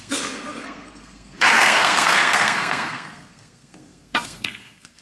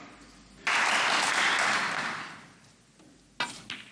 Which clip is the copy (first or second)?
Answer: first